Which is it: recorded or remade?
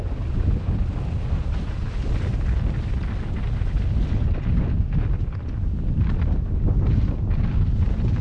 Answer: recorded